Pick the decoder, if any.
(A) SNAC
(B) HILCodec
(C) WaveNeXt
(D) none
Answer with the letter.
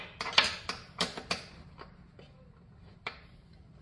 D